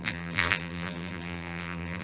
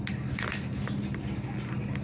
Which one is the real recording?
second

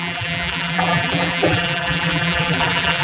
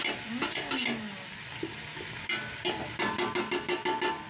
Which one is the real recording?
second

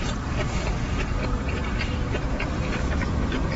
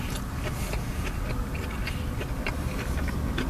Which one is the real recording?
second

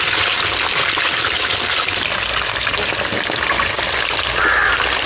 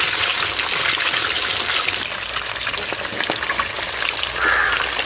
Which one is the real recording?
second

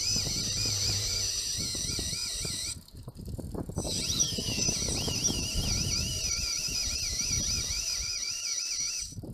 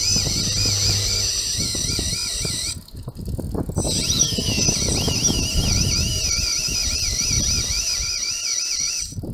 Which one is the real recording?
second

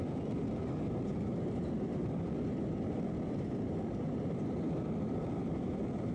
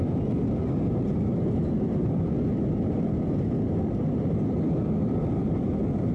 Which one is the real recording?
second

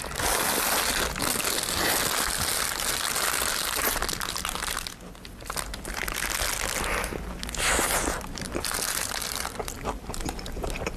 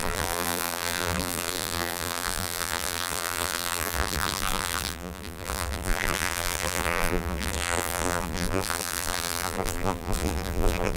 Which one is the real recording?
first